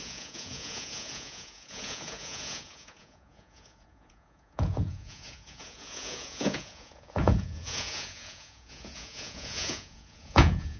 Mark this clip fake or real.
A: fake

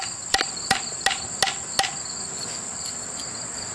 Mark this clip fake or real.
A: real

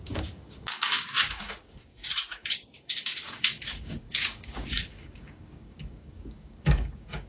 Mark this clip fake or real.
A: fake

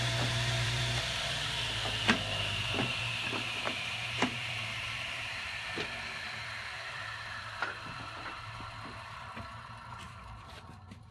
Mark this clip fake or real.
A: fake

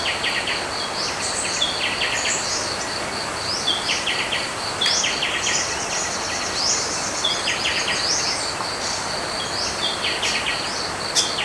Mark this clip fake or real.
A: real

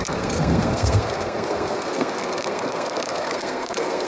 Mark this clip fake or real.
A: fake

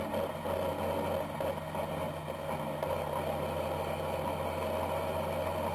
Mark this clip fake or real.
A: real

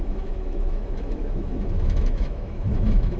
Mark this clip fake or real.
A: fake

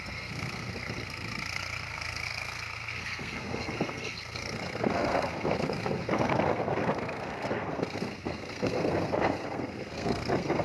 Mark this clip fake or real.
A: fake